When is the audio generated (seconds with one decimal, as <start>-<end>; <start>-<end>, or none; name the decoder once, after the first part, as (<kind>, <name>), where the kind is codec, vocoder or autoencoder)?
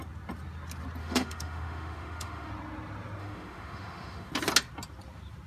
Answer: 1.0-2.5 (autoencoder, DAC-VAE); 3.2-4.3